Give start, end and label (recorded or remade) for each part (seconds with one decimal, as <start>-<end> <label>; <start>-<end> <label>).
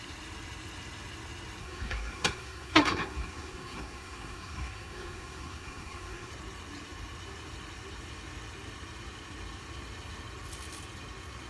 0.0-1.6 recorded; 1.6-6.3 remade; 6.3-11.5 recorded